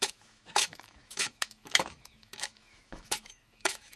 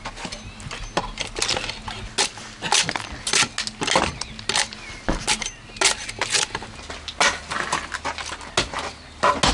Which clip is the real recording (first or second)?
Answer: second